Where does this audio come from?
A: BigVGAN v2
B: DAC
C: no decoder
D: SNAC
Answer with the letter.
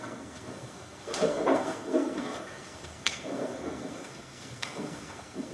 D